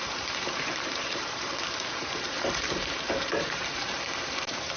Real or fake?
fake